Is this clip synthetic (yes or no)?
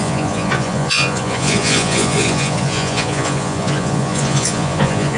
yes